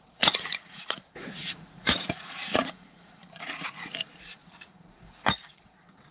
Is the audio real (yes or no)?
no